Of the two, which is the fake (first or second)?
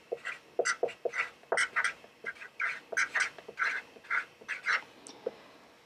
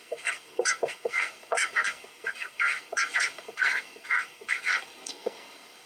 second